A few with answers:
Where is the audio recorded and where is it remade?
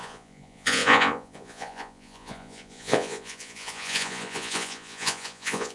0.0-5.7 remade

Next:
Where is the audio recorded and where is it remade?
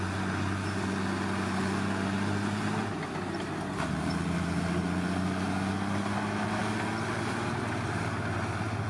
0.0-8.9 recorded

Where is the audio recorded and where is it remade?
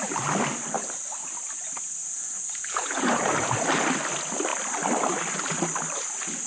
0.0-2.0 recorded; 2.0-3.3 remade; 3.3-6.5 recorded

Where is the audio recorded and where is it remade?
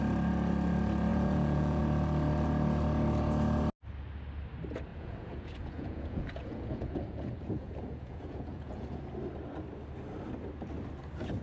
0.0-1.1 recorded; 1.1-1.8 remade; 1.8-4.9 recorded; 4.9-9.0 remade; 9.0-11.4 recorded